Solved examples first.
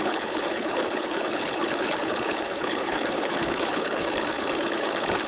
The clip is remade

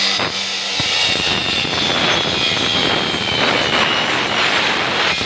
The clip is recorded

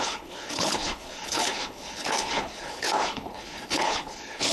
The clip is remade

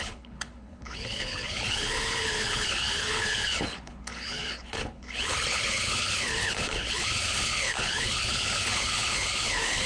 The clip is remade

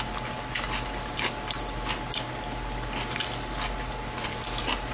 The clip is recorded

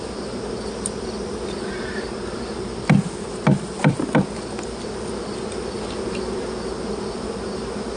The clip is recorded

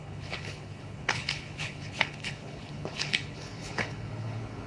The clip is remade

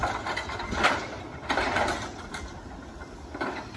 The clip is recorded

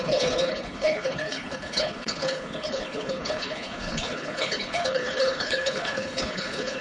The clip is remade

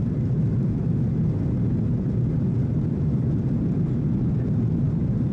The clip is recorded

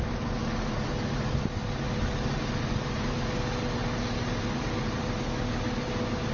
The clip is recorded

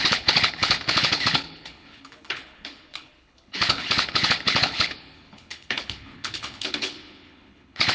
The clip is remade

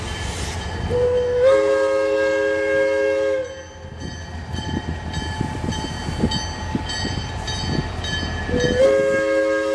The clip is recorded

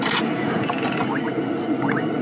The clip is recorded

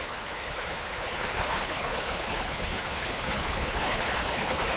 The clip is remade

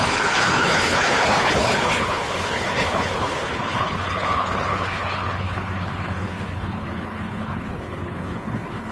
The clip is remade